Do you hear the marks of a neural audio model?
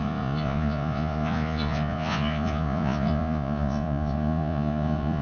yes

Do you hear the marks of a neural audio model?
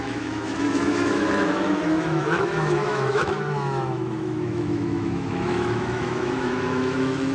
yes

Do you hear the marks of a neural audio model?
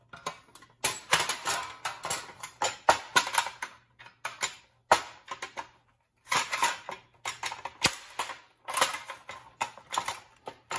no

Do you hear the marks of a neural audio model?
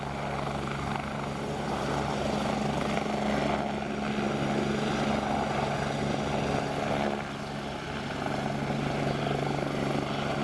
no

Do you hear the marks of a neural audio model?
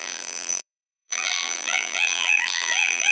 yes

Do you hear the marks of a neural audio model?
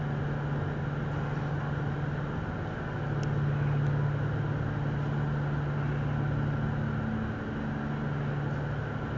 no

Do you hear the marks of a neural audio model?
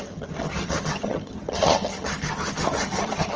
yes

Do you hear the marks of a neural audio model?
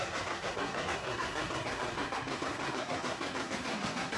yes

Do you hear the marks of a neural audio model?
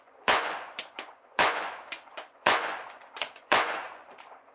yes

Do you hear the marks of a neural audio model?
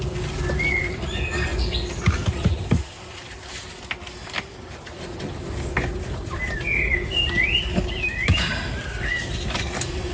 no